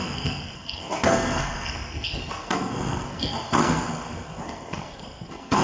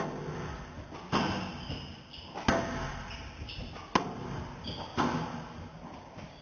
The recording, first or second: second